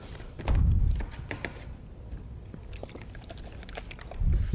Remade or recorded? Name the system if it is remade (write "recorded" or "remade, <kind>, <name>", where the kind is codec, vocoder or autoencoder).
recorded